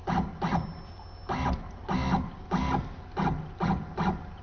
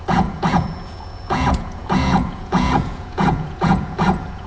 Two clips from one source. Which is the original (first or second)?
first